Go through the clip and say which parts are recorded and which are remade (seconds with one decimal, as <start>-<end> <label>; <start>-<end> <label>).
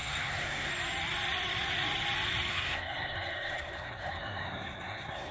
0.0-0.7 remade; 0.7-2.5 recorded; 2.5-5.3 remade